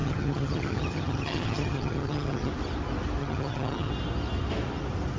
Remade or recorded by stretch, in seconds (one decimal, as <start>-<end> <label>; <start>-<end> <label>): 0.0-2.5 remade; 2.5-3.2 recorded; 3.2-3.9 remade; 3.9-5.2 recorded